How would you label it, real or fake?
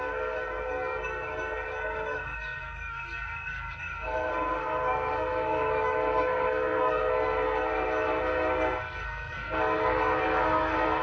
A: fake